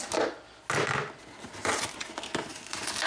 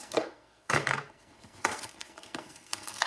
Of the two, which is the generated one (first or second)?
second